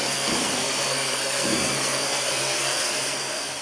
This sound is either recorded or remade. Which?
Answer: remade